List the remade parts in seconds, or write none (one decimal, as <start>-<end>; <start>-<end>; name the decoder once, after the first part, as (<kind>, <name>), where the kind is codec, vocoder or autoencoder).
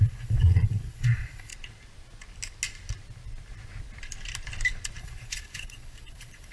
0.0-1.5 (vocoder, Vocos); 5.0-6.5